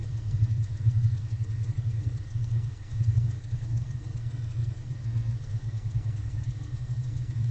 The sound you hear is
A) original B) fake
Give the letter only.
B